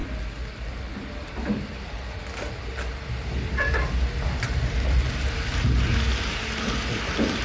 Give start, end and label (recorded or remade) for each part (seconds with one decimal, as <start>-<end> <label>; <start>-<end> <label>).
0.0-7.4 recorded

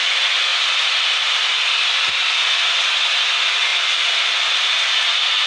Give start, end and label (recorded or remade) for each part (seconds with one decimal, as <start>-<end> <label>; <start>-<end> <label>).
0.0-5.5 recorded

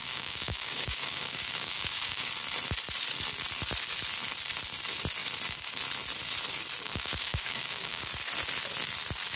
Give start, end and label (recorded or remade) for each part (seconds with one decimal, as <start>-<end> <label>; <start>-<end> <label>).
0.0-2.3 remade; 2.3-6.8 recorded; 6.8-8.1 remade; 8.1-9.4 recorded